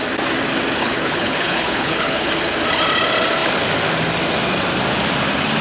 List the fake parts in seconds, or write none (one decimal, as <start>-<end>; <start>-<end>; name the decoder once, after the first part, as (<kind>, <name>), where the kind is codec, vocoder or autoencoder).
0.8-2.3 (codec, HILCodec)